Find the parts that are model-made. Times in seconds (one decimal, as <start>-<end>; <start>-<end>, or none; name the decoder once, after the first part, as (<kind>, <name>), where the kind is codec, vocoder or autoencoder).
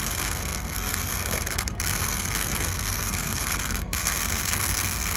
0.0-5.2 (codec, SNAC)